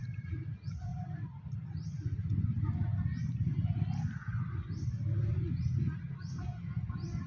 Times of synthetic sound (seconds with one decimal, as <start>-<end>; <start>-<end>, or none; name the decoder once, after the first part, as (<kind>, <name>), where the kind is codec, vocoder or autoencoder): none